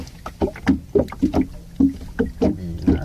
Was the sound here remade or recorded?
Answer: recorded